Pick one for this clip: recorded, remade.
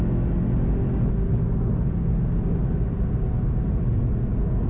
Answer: recorded